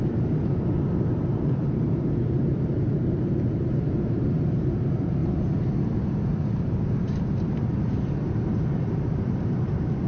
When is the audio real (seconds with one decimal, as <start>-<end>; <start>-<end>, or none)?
5.2-6.3